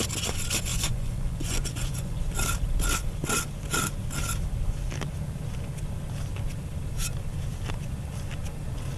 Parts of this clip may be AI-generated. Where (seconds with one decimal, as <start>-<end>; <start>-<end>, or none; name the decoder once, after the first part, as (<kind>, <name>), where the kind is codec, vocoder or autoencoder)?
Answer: 0.7-2.2 (vocoder, Vocos)

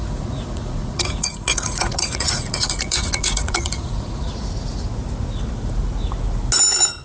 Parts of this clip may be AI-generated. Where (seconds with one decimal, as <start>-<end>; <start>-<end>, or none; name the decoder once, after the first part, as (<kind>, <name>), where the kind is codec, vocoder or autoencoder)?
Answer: 0.0-4.2 (vocoder, Vocos)

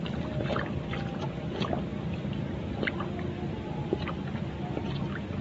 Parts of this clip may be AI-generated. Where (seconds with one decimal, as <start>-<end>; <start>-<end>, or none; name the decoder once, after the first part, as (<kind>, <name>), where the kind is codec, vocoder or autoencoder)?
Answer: none

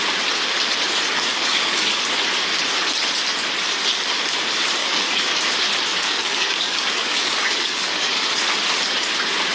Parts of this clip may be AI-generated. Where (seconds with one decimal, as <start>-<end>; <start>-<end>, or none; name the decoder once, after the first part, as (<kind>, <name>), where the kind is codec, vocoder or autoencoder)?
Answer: 1.3-2.0 (codec, DAC); 4.8-5.4; 5.9-8.3

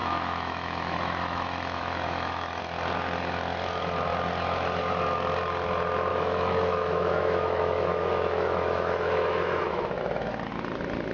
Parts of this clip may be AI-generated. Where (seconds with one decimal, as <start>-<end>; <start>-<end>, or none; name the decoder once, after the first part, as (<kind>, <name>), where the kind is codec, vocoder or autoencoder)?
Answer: 0.0-2.6 (autoencoder, DAC-VAE); 6.1-10.3

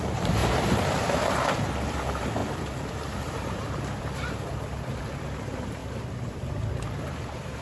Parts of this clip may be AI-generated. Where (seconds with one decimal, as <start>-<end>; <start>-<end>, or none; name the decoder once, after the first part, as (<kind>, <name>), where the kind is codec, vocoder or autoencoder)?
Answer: 0.0-5.8 (vocoder, BigVGAN v2); 6.7-7.6